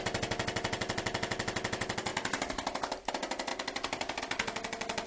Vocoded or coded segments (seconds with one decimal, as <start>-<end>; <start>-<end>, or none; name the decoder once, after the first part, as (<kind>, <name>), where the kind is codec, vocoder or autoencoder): 3.5-4.2 (vocoder, BigVGAN v2)